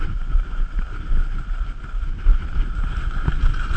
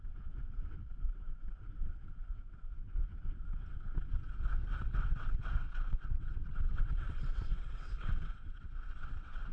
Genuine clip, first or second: first